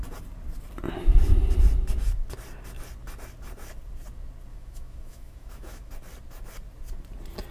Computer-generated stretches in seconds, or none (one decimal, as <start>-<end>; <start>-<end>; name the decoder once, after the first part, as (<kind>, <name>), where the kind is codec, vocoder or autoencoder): 4.5-5.9 (autoencoder, DAC-VAE)